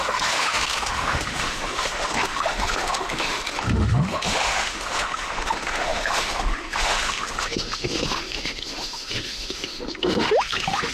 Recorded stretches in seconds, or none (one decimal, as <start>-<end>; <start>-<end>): none